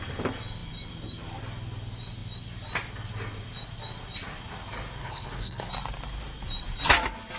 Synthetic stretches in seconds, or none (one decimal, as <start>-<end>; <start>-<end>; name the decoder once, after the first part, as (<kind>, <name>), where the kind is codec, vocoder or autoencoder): 5.0-5.7 (codec, HILCodec)